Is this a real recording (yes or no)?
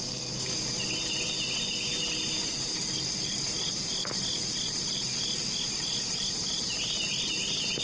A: yes